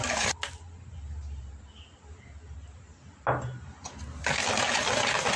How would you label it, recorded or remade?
recorded